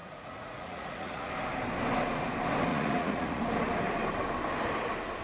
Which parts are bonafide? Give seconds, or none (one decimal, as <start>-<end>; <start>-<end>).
1.3-2.7; 3.4-5.2